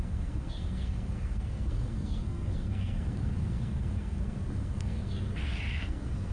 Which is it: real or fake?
fake